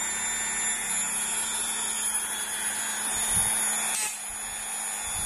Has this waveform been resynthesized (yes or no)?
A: no